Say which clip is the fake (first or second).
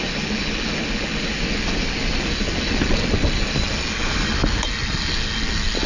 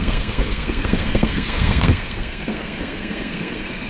second